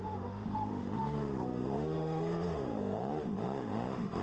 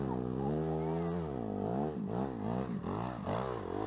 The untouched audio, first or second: second